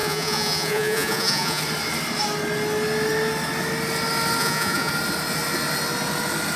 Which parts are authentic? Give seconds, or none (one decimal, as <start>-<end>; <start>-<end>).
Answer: 1.6-4.4; 4.9-6.6